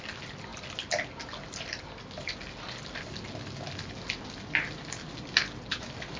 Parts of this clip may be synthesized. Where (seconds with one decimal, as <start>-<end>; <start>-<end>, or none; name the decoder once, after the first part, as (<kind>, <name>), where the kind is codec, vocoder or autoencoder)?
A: none